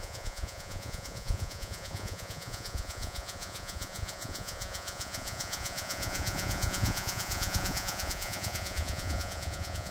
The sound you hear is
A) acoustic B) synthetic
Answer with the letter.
B